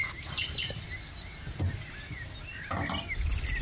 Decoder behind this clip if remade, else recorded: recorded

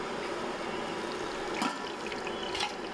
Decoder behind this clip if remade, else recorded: recorded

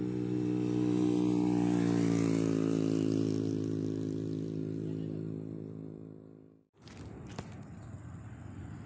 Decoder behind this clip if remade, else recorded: recorded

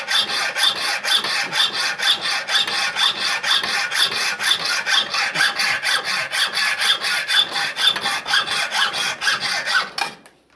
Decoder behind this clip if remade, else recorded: recorded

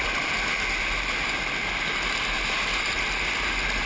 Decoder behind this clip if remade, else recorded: recorded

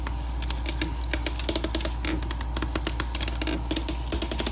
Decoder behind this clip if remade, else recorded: recorded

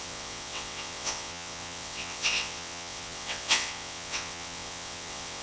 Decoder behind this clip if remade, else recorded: remade, vocoder, WaveNeXt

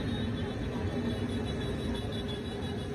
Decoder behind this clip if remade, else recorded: recorded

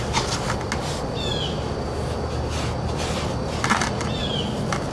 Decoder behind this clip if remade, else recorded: recorded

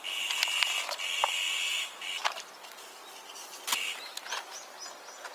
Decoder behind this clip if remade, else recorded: recorded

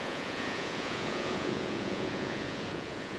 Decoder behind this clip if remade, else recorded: remade, vocoder, Vocos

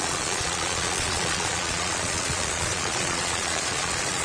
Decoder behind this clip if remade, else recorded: remade, vocoder, Vocos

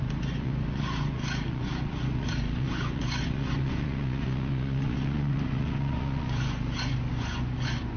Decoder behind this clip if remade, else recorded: remade, vocoder, Vocos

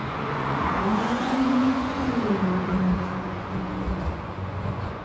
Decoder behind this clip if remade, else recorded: remade, vocoder, Vocos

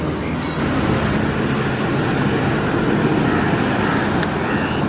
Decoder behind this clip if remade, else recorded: recorded